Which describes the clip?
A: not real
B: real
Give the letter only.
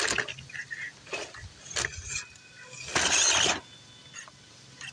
B